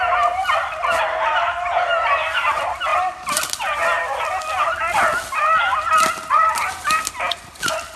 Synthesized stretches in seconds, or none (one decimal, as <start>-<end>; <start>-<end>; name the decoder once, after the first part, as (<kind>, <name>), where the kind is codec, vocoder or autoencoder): none